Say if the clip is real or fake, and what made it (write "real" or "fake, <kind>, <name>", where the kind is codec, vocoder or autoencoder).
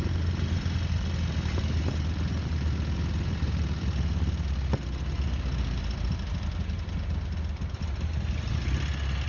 real